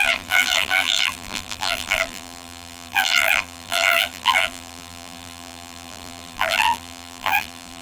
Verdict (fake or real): fake